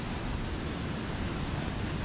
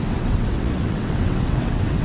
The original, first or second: first